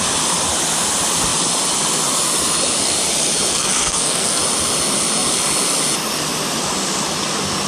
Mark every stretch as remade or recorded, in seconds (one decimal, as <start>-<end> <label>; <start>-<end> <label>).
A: 0.0-3.5 recorded; 3.5-4.4 remade; 4.4-7.7 recorded